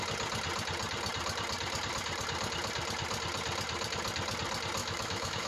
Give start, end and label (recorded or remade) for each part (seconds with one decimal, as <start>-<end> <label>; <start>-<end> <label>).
0.0-4.8 recorded; 4.8-5.5 remade